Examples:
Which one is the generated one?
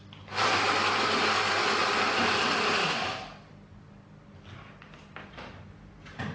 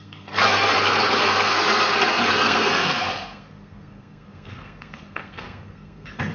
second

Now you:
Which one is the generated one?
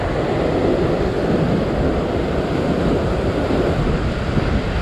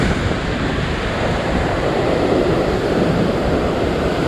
second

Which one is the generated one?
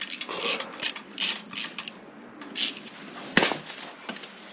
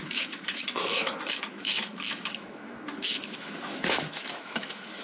second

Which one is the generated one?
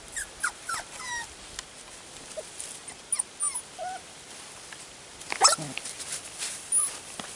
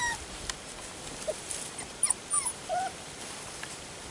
second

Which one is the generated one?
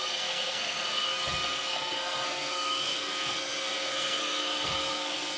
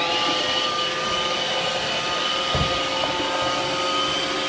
first